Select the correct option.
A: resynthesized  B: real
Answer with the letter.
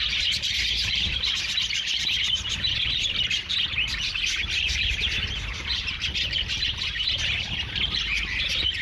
A